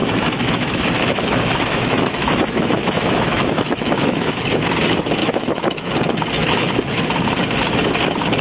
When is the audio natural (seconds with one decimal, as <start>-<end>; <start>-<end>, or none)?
4.6-5.2; 5.9-6.4; 7.0-8.4